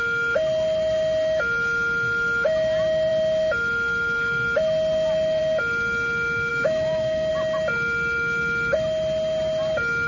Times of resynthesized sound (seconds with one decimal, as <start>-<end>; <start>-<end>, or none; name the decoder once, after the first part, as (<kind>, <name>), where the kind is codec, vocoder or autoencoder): 6.5-7.3 (autoencoder, DAC-VAE)